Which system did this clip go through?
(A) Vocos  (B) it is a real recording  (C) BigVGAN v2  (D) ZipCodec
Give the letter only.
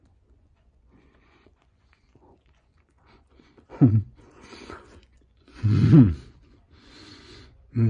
A